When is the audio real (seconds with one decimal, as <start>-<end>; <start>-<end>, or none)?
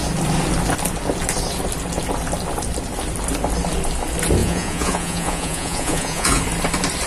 0.0-4.4; 6.4-7.1